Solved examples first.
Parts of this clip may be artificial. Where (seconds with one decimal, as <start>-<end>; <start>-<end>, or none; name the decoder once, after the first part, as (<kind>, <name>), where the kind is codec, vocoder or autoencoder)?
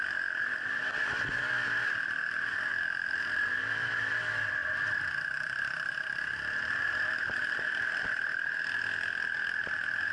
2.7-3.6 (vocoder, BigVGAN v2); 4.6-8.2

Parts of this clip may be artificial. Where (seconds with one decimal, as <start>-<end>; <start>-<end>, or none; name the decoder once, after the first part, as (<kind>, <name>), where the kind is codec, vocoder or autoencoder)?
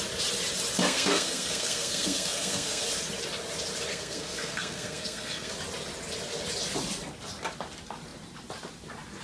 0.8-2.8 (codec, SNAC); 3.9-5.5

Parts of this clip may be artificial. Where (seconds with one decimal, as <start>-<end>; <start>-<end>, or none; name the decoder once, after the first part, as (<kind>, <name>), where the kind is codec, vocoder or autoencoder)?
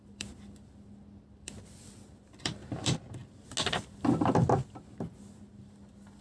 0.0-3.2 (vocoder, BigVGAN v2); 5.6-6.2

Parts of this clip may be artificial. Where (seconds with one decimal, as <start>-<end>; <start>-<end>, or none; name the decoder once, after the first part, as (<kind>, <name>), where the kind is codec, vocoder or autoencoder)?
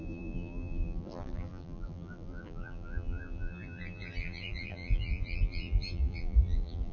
0.0-6.9 (vocoder, BigVGAN v2)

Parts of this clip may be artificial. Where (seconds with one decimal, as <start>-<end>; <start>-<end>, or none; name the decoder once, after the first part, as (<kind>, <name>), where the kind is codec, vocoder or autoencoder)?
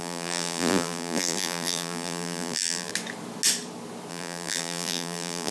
0.0-2.9 (vocoder, BigVGAN v2); 4.1-5.5